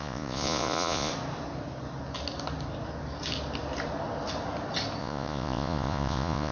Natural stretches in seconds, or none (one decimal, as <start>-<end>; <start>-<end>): 1.1-5.0